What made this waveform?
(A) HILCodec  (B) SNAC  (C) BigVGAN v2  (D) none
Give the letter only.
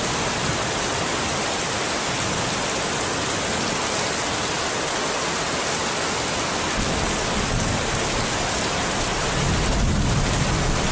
D